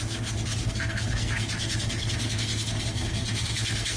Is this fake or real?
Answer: fake